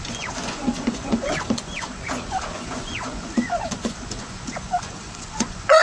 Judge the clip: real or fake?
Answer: fake